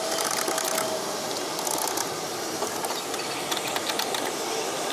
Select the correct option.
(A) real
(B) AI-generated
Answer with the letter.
A